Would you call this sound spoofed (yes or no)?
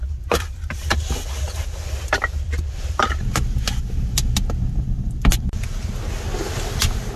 no